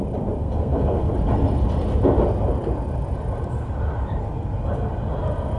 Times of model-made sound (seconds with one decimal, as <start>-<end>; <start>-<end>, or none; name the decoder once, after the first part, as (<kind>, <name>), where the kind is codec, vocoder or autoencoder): 0.4-1.1 (codec, SNAC)